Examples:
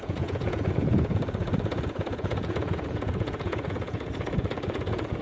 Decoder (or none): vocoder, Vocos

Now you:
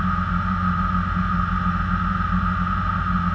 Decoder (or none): none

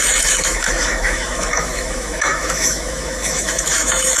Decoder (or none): autoencoder, DAC-VAE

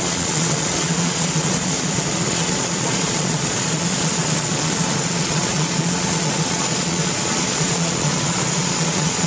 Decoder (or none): vocoder, Vocos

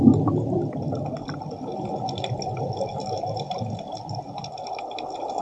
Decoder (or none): none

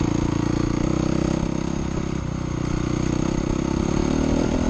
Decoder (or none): none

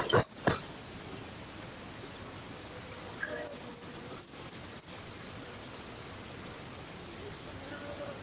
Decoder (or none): none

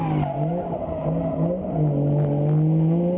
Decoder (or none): none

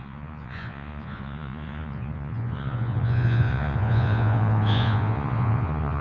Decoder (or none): vocoder, Vocos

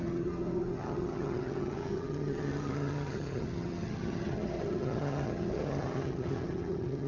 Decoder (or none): vocoder, HiFi-GAN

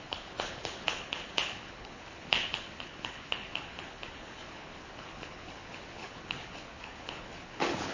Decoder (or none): codec, HILCodec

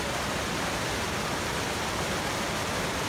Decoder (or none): none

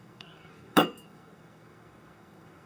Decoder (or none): codec, SNAC